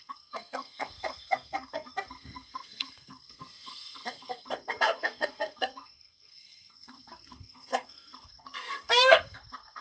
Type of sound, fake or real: fake